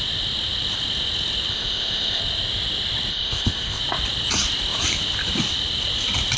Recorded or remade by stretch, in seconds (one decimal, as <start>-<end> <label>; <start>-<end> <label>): 0.0-1.5 recorded; 1.5-2.2 remade; 2.2-3.1 recorded; 3.1-3.8 remade; 3.8-6.4 recorded